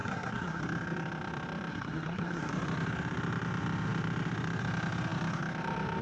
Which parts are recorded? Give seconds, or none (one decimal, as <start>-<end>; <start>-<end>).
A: 0.6-1.7; 2.5-6.0